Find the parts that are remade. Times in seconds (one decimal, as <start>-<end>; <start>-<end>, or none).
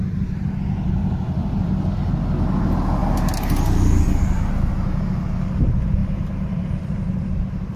1.0-2.1; 6.0-7.8